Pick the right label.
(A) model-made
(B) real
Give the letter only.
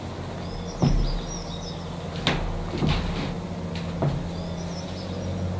B